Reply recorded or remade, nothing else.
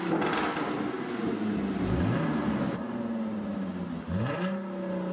recorded